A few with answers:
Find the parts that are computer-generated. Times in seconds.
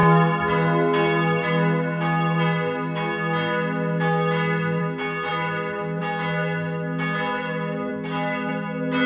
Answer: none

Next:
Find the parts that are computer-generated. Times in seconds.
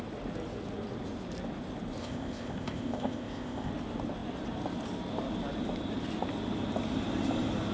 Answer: 2.0-3.7 (codec, ZipCodec)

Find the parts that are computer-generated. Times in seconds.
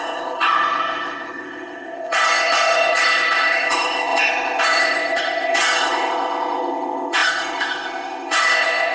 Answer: 0.0-8.9 (codec, ZipCodec)